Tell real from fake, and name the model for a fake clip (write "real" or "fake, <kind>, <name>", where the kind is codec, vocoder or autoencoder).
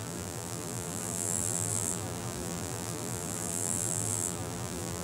fake, vocoder, BigVGAN v2